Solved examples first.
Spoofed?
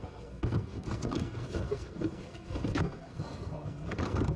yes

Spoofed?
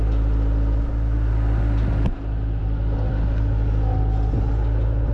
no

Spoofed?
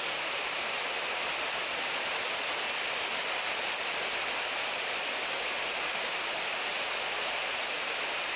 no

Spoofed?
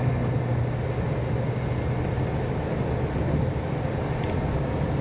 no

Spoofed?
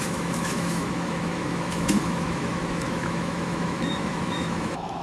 yes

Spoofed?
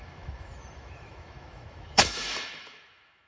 yes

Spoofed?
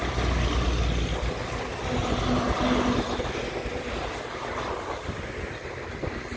no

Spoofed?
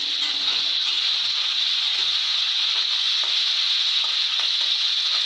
yes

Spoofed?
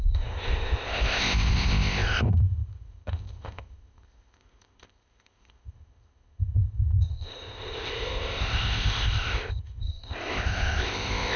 yes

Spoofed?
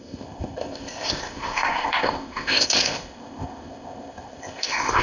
yes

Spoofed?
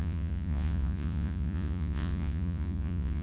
yes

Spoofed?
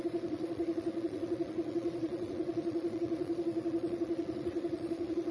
yes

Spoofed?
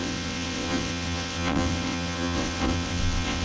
yes